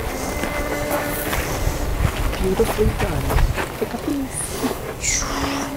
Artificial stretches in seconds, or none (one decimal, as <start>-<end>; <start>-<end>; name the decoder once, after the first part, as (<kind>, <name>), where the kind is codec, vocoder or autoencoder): 0.7-1.4 (codec, DAC); 4.1-5.8